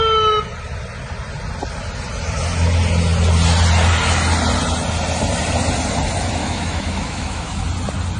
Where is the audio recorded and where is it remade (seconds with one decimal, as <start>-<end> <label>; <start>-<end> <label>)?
0.0-6.4 recorded; 6.4-7.6 remade; 7.6-8.2 recorded